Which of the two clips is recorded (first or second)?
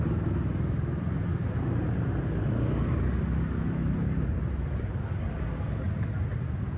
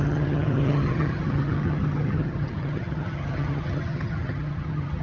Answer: first